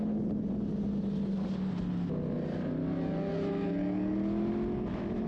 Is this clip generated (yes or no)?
no